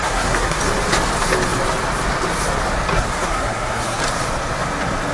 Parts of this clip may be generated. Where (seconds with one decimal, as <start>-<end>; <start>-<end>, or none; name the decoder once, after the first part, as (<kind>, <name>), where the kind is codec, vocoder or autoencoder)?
0.0-0.6 (codec, SNAC); 2.9-4.0